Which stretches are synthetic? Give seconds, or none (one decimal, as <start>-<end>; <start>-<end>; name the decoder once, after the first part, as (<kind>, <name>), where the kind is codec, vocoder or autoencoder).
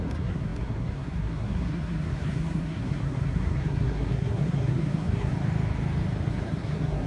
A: 0.0-5.3 (codec, SNAC); 6.3-7.1